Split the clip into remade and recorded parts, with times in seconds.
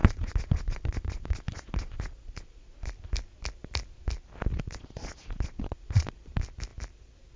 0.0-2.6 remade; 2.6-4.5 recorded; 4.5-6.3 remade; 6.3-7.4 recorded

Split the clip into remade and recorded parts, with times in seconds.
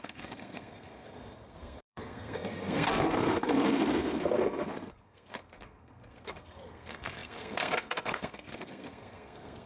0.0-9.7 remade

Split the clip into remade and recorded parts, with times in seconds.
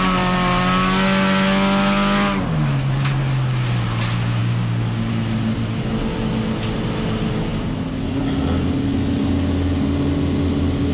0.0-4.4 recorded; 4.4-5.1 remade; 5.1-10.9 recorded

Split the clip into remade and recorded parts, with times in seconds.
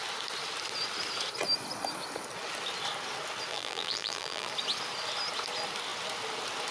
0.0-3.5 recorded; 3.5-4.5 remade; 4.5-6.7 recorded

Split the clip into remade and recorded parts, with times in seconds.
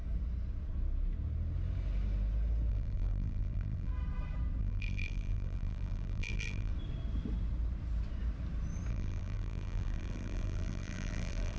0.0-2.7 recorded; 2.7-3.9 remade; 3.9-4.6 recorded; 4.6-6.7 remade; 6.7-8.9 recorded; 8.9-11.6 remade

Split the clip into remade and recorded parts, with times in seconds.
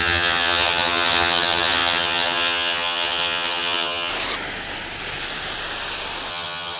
0.0-4.1 remade; 4.1-6.3 recorded; 6.3-6.8 remade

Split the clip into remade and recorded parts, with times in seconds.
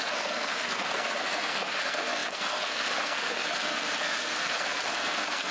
0.0-5.5 remade